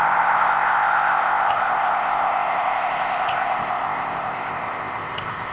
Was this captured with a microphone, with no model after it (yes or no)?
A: no